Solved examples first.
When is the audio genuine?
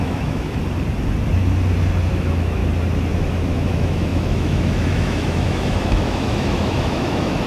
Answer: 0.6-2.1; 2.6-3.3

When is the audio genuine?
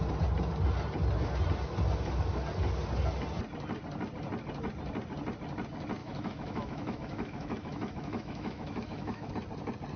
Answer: 0.0-6.0; 9.3-10.0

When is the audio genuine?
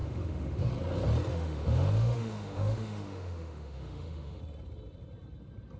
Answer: 0.7-1.3; 4.4-5.8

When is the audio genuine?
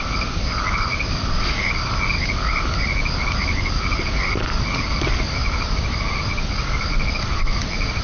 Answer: 0.0-8.0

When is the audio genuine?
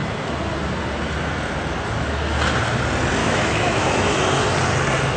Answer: 0.0-3.2; 4.2-5.2